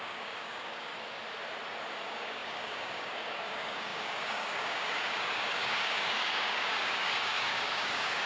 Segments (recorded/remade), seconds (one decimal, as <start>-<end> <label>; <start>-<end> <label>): 0.0-0.9 remade; 0.9-1.9 recorded; 1.9-8.3 remade